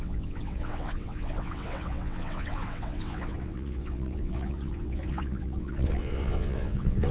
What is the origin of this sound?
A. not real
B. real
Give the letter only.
A